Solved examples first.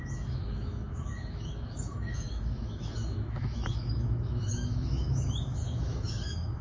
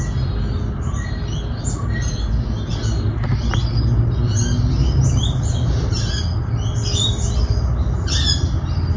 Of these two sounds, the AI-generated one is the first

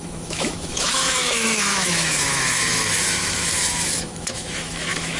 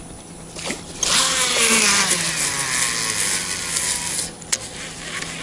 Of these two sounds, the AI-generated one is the first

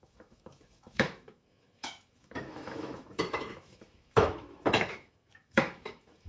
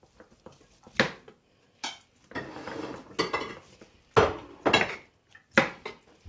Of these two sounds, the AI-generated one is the first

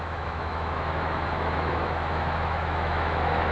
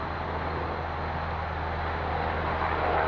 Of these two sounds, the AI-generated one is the first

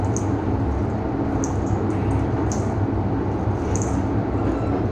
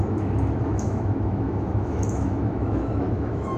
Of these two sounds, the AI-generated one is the second